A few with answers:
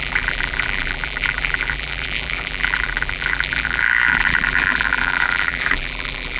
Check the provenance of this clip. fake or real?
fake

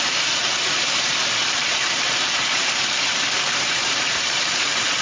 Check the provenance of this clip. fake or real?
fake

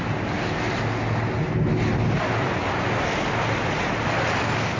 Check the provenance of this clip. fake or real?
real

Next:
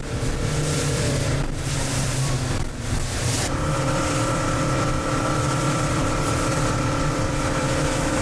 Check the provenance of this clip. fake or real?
fake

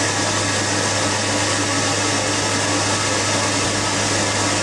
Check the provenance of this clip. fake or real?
real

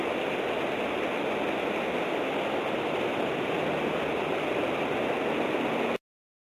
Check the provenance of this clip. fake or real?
real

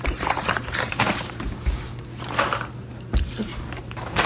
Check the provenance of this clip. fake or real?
fake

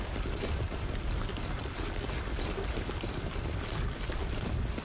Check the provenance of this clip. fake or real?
real